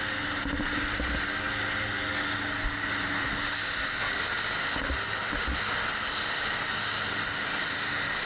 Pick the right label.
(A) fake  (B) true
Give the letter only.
B